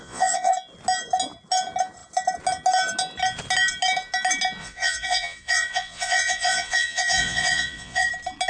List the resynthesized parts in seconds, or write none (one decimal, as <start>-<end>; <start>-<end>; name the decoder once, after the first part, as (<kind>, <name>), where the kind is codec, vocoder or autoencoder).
0.0-0.5 (vocoder, Vocos); 4.6-8.1